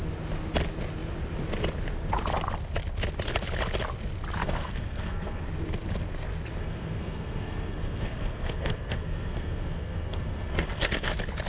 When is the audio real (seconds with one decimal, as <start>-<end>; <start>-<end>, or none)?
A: 0.0-4.4; 5.4-6.6; 11.1-11.5